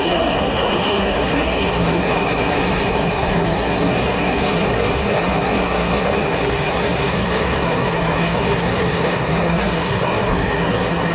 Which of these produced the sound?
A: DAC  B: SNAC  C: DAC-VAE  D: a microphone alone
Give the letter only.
B